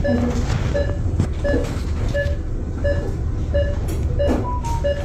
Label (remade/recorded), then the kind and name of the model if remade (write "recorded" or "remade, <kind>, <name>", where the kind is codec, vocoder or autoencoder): recorded